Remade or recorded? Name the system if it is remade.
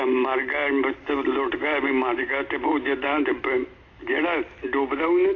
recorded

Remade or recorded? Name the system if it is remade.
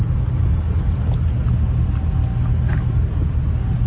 recorded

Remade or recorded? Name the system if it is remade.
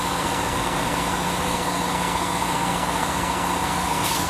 remade, codec, SNAC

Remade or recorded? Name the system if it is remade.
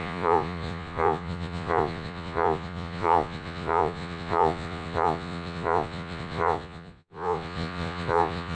remade, vocoder, Vocos